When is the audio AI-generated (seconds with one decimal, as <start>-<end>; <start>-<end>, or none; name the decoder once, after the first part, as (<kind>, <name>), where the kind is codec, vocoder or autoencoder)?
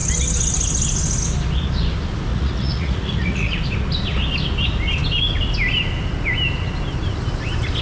2.3-3.6 (vocoder, Vocos)